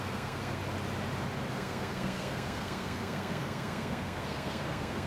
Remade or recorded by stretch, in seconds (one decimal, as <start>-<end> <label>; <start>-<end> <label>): 0.0-0.6 remade; 0.6-1.5 recorded; 1.5-5.1 remade